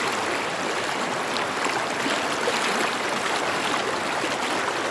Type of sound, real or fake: real